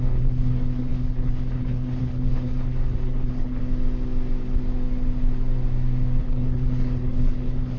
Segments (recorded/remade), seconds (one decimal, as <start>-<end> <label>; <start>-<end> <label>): 0.0-3.6 remade; 3.6-6.2 recorded; 6.2-7.8 remade

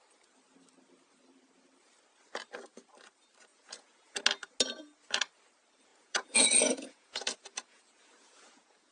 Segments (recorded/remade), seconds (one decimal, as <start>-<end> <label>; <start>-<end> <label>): 0.0-3.5 recorded; 3.5-4.2 remade; 4.2-5.9 recorded; 5.9-8.9 remade

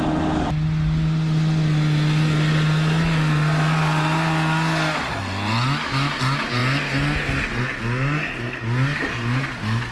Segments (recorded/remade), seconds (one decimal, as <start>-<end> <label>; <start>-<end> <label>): 0.0-9.9 recorded

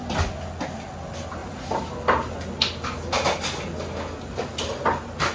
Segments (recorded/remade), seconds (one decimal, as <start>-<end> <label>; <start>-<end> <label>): 0.0-1.4 recorded; 1.4-2.3 remade; 2.3-5.3 recorded

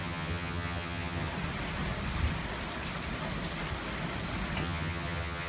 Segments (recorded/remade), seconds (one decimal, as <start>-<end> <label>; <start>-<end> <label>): 0.0-1.3 remade; 1.3-4.6 recorded; 4.6-5.5 remade

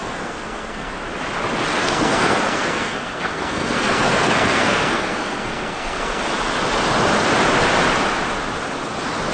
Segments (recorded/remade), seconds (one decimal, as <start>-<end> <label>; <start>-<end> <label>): 0.0-0.9 remade; 0.9-1.8 recorded; 1.8-6.2 remade; 6.2-9.3 recorded

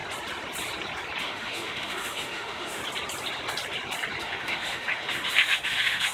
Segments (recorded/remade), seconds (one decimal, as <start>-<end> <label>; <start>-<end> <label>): 0.0-1.2 recorded; 1.2-2.8 remade; 2.8-4.2 recorded; 4.2-6.1 remade